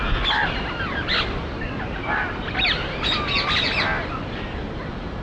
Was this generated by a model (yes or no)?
no